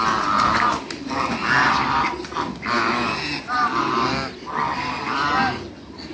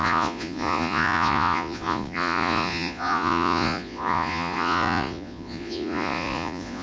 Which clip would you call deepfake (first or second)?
second